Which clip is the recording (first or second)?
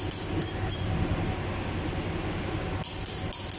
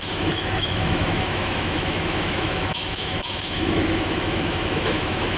first